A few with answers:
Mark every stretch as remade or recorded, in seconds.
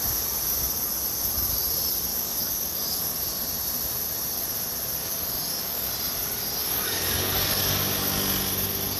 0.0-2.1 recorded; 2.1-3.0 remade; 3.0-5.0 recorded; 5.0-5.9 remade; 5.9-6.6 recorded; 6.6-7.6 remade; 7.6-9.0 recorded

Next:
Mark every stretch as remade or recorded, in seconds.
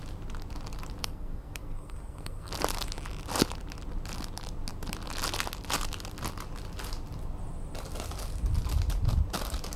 0.0-1.0 recorded; 1.0-2.5 remade; 2.5-9.8 recorded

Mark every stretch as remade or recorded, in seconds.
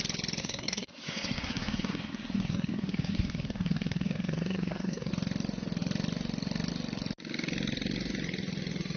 0.0-0.4 recorded; 0.4-5.1 remade; 5.1-9.0 recorded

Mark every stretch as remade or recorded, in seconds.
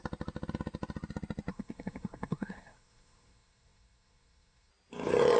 0.0-1.5 recorded; 1.5-4.7 remade; 4.7-5.4 recorded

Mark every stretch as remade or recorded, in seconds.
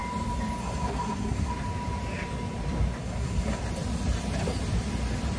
0.0-0.6 recorded; 0.6-1.5 remade; 1.5-3.0 recorded; 3.0-3.6 remade; 3.6-5.4 recorded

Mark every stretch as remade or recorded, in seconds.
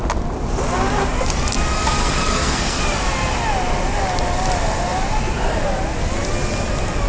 0.0-2.0 recorded; 2.0-2.8 remade; 2.8-7.1 recorded